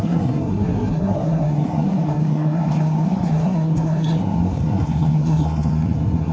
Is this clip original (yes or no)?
no